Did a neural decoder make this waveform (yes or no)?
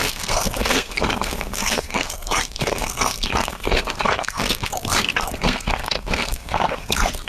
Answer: yes